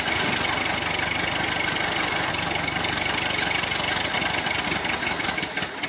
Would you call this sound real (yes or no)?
yes